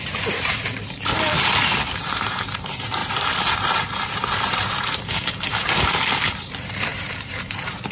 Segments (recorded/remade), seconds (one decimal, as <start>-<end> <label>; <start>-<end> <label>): 0.0-7.9 remade